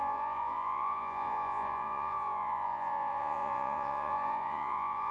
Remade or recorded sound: remade